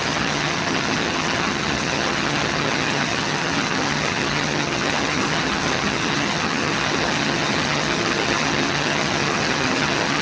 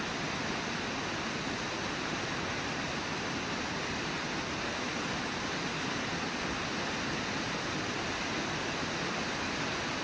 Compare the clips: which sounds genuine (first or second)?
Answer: second